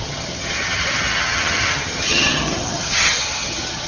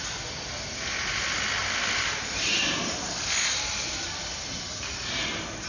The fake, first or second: first